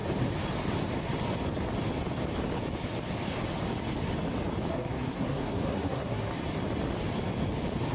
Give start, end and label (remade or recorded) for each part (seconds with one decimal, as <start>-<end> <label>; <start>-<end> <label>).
0.0-4.7 recorded; 4.7-6.3 remade; 6.3-7.9 recorded